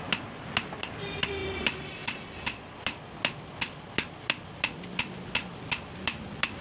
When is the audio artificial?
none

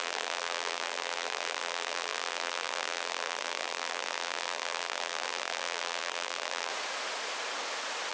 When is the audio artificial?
0.0-6.7 (vocoder, BigVGAN v2)

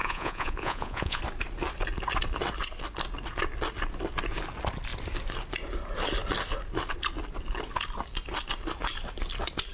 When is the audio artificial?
0.0-1.2 (vocoder, Vocos)

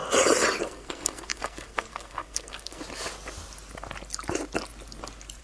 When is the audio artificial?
0.6-2.8 (codec, SNAC)

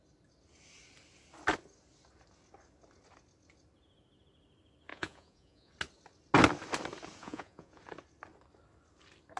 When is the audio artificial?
4.9-5.7 (vocoder, Vocos); 7.2-7.8